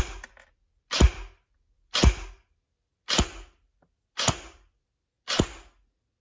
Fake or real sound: real